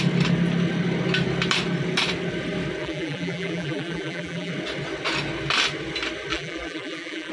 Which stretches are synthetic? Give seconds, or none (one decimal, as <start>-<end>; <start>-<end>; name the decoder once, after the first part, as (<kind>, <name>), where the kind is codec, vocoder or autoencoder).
2.8-4.5 (vocoder, BigVGAN v2); 6.3-7.3